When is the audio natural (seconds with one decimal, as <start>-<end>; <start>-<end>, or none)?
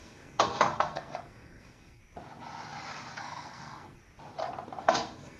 2.0-3.2; 4.0-4.8